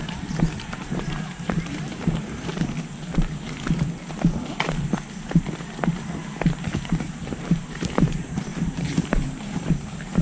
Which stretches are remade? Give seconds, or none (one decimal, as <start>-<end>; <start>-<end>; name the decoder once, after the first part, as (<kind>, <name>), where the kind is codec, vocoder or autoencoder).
0.0-2.5 (vocoder, BigVGAN v2); 6.9-10.2